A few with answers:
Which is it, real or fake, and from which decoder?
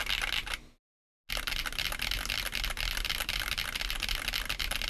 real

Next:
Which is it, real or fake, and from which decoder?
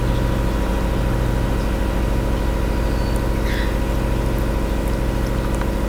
real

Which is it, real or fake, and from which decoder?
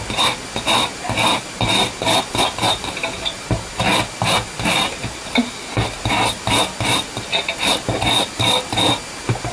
real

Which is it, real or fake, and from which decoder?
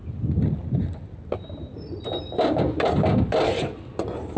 fake, vocoder, BigVGAN v2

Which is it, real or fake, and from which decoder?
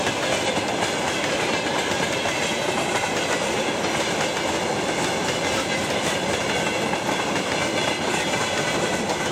real